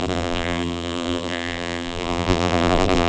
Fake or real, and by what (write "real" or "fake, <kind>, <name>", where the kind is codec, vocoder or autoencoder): fake, vocoder, BigVGAN v2